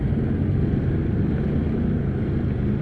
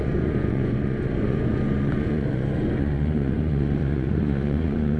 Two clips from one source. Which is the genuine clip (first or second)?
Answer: first